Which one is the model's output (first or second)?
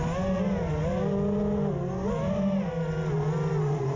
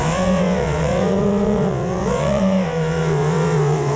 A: second